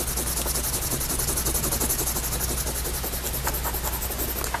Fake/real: real